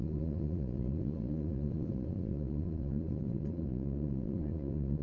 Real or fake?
fake